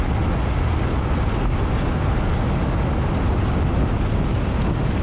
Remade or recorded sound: recorded